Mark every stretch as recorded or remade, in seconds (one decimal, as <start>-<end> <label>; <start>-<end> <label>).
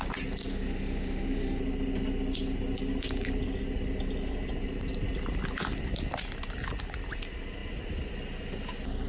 0.0-0.5 recorded; 0.5-1.6 remade; 1.6-9.1 recorded